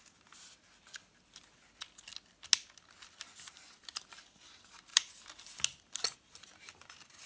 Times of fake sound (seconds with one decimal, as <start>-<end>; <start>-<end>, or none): none